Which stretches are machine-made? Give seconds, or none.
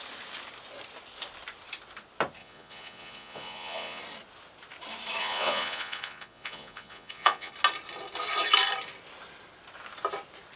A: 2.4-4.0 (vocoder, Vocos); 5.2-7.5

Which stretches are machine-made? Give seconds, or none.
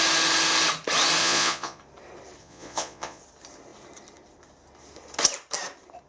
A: 1.2-1.8 (vocoder, Vocos); 2.4-3.2